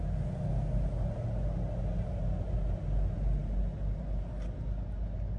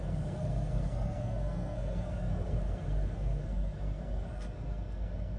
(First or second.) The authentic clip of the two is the first